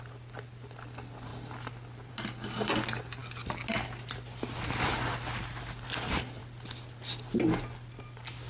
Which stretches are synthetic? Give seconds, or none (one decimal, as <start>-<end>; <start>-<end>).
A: none